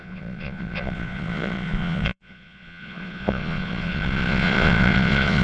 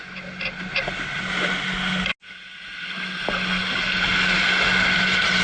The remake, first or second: first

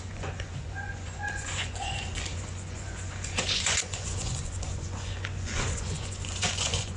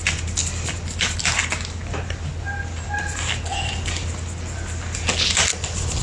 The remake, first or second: first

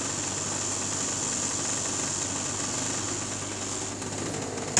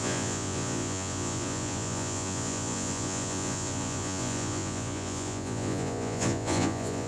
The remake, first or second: second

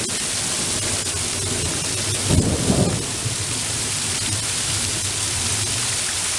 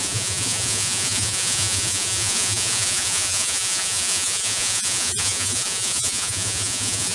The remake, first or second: second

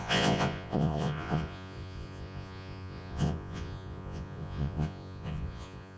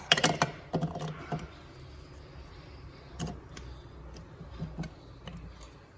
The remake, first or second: first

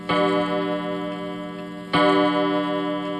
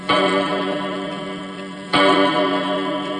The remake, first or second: second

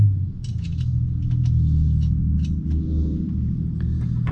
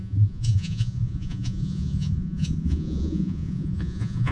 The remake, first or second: second